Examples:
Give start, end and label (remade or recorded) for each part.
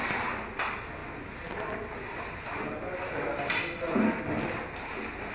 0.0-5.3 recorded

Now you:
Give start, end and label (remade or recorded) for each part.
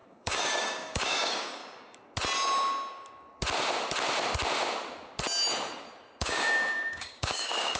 0.0-1.6 remade; 1.6-6.2 recorded; 6.2-7.8 remade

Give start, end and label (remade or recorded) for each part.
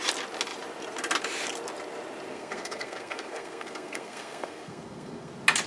0.0-2.3 recorded; 2.3-5.3 remade; 5.3-5.7 recorded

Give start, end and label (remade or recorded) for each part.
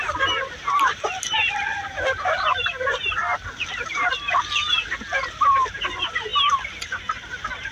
0.0-3.2 remade; 3.2-3.7 recorded; 3.7-6.3 remade; 6.3-7.7 recorded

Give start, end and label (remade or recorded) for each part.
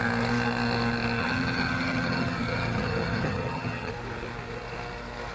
0.0-1.2 recorded; 1.2-3.9 remade; 3.9-5.3 recorded